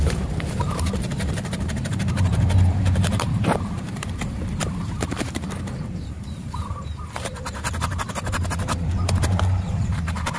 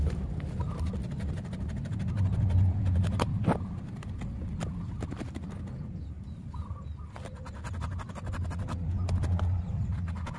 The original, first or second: second